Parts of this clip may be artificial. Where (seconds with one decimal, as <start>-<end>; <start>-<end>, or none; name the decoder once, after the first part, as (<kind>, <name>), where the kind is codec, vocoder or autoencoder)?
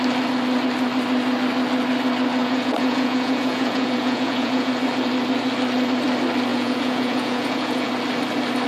2.4-4.7 (vocoder, Vocos); 6.5-7.9